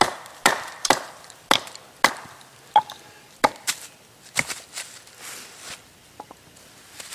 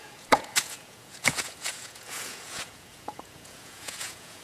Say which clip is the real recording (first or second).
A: first